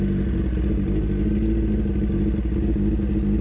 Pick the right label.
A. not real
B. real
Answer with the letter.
B